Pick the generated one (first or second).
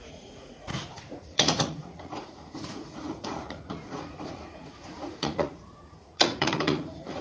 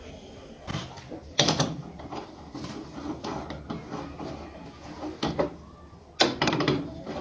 first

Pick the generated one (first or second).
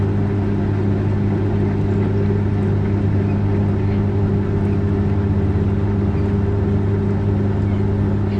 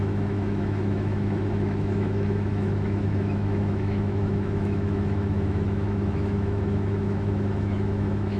second